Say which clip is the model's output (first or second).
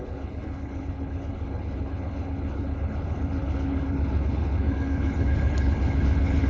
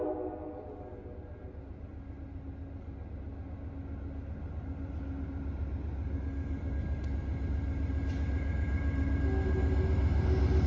first